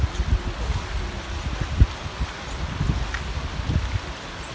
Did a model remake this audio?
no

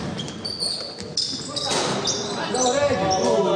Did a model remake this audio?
no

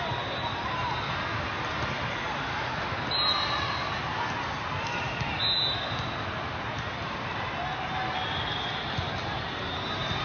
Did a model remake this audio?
no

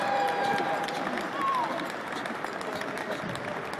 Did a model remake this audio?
no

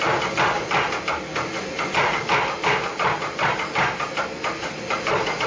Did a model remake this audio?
no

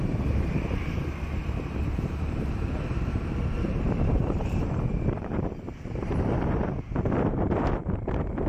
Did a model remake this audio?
yes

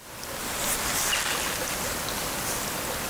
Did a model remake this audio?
no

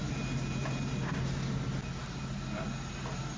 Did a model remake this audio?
no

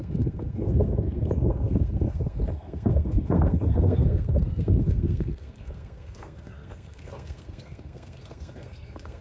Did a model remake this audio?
yes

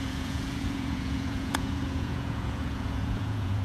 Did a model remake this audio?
yes